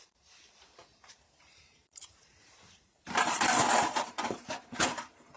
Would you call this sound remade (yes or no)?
yes